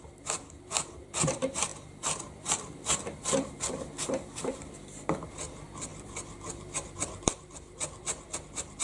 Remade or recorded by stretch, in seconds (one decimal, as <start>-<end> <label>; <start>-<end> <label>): 0.0-8.8 remade